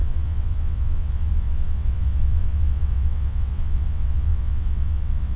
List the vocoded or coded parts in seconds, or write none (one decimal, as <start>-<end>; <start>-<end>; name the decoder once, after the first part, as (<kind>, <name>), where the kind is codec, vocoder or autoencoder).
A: 0.0-5.4 (vocoder, WaveNeXt)